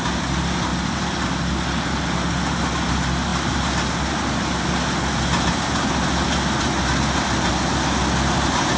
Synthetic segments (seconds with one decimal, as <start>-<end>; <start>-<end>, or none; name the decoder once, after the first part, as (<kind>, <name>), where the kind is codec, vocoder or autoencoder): none